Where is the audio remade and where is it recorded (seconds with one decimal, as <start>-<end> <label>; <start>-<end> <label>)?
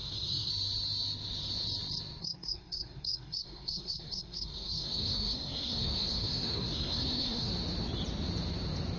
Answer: 0.0-0.5 remade; 0.5-2.2 recorded; 2.2-7.5 remade; 7.5-9.0 recorded